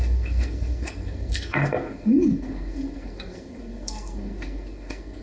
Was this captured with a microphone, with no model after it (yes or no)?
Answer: no